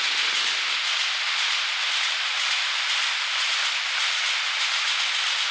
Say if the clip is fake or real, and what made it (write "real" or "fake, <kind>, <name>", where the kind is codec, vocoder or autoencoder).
real